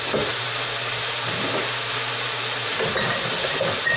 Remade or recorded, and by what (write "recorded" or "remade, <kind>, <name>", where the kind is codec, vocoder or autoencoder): recorded